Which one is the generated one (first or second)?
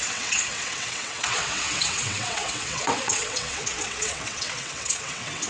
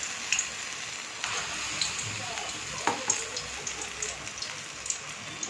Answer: first